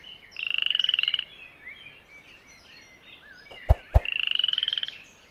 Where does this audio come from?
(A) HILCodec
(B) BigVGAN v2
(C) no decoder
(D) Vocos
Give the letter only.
B